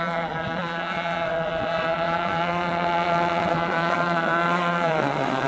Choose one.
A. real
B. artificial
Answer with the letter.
B